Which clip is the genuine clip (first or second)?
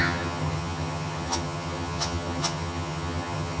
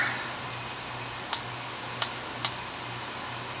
second